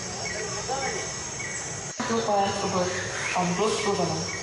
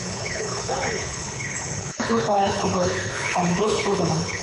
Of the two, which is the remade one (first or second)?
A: second